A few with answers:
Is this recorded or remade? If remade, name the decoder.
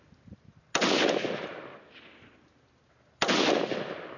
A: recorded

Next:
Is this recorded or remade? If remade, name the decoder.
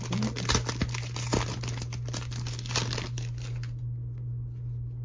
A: recorded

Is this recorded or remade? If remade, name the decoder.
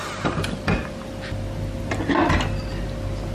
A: recorded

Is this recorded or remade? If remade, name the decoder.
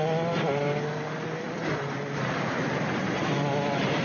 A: recorded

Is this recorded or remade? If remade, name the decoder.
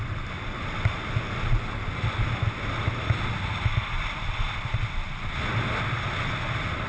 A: recorded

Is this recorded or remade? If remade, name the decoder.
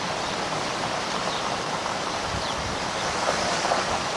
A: remade, vocoder, BigVGAN v2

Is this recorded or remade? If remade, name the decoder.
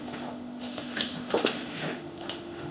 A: remade, autoencoder, DAC-VAE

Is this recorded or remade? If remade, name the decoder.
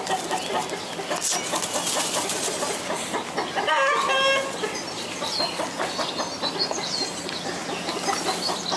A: recorded